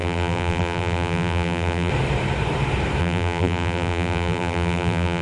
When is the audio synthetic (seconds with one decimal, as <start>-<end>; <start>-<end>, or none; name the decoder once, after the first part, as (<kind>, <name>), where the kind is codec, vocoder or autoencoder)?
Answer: 0.0-1.9 (vocoder, BigVGAN v2); 3.0-5.2